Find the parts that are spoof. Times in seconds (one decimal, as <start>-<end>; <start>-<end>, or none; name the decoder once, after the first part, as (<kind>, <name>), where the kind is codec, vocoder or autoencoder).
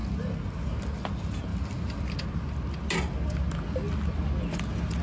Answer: none